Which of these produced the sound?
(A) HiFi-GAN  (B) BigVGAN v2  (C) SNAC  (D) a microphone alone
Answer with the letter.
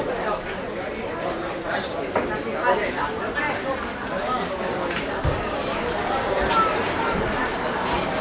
D